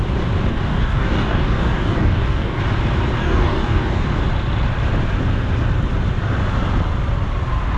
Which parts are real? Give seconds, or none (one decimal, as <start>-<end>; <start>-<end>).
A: 0.0-0.5; 2.6-3.2; 4.2-7.8